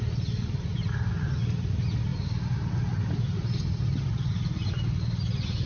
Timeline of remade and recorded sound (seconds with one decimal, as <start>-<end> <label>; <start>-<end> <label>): 0.0-5.7 recorded

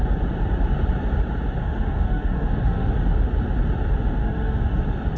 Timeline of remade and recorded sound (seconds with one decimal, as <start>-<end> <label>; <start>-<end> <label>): 0.0-1.6 recorded; 1.6-2.9 remade; 2.9-4.2 recorded; 4.2-4.8 remade; 4.8-5.2 recorded

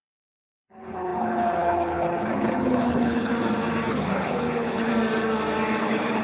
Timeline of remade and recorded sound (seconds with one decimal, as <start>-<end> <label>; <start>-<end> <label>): 0.0-3.3 remade; 3.3-3.9 recorded; 3.9-4.9 remade; 4.9-5.8 recorded; 5.8-6.2 remade

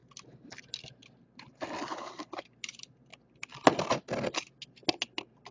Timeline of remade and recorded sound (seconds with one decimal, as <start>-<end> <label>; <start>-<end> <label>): 0.0-5.5 recorded

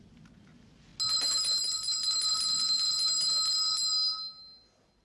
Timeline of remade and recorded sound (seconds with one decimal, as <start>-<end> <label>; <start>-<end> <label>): 0.0-5.0 recorded